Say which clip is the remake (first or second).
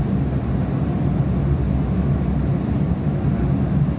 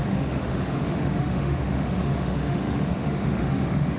second